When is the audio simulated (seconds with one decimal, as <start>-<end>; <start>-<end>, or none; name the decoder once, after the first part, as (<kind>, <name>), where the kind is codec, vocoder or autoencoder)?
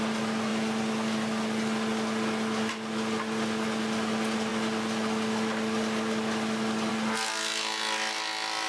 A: none